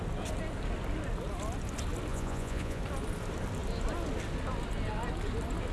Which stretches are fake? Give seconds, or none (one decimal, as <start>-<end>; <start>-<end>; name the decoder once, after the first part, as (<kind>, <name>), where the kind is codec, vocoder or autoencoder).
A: 2.1-2.8 (vocoder, Vocos)